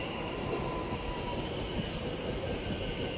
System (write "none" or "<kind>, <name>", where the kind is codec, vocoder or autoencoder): none